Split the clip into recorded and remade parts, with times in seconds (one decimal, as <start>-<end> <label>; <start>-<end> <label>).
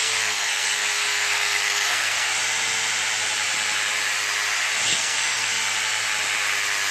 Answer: 0.0-2.3 remade; 2.3-4.9 recorded; 4.9-5.5 remade; 5.5-6.9 recorded